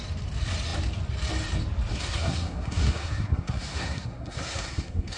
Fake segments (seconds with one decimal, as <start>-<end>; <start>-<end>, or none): 1.9-5.2